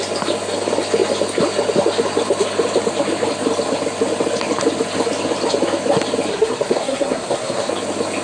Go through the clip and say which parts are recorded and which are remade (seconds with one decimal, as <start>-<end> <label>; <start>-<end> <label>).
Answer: 0.0-6.3 recorded; 6.3-7.7 remade; 7.7-8.2 recorded

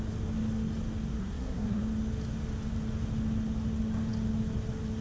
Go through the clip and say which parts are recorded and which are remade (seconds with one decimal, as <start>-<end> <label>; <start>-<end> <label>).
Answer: 0.0-1.2 recorded; 1.2-1.8 remade; 1.8-5.0 recorded

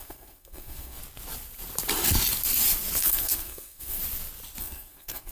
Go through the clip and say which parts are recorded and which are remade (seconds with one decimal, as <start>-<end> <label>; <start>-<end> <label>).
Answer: 0.0-1.0 remade; 1.0-3.0 recorded; 3.0-4.0 remade; 4.0-4.6 recorded; 4.6-5.3 remade

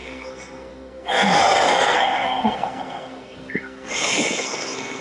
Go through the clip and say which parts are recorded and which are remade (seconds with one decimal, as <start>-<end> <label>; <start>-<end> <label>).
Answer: 0.0-5.0 remade

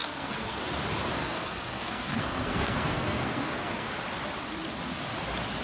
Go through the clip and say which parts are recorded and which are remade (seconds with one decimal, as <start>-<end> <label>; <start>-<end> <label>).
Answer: 0.0-0.6 remade; 0.6-1.2 recorded; 1.2-3.9 remade; 3.9-5.6 recorded

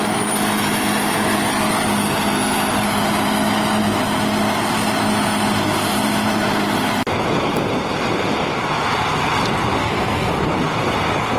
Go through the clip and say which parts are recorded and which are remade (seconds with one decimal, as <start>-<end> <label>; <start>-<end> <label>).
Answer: 0.0-9.8 recorded; 9.8-10.3 remade; 10.3-11.4 recorded

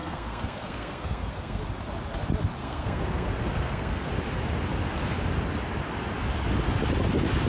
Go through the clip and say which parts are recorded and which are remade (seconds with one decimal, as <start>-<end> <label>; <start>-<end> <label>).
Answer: 0.0-1.6 remade; 1.6-2.6 recorded; 2.6-4.1 remade; 4.1-7.5 recorded